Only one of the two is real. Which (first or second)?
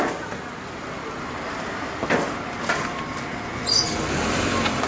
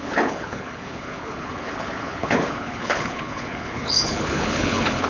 first